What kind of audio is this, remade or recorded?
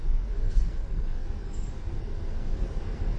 remade